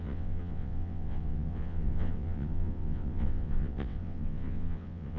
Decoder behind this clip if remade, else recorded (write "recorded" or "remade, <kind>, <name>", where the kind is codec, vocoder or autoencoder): remade, vocoder, WaveNeXt